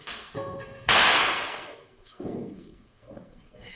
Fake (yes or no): yes